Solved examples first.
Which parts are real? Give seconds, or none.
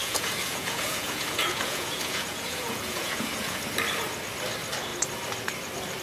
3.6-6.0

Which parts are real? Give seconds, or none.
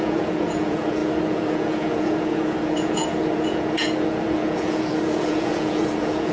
none